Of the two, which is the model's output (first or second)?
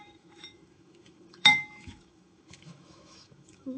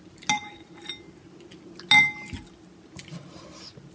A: first